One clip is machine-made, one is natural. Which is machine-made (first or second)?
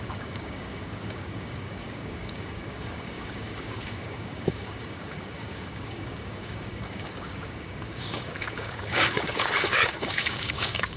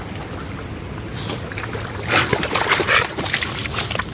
first